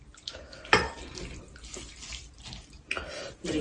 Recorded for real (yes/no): yes